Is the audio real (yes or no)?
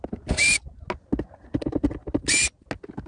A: yes